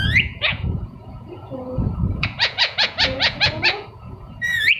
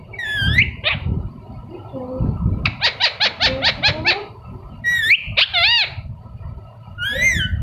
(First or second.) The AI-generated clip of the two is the first